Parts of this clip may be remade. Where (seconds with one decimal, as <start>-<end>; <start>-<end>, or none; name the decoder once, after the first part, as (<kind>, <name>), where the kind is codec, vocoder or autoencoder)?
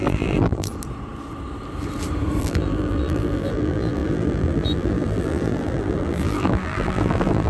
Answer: 0.0-0.7 (vocoder, BigVGAN v2); 2.4-7.5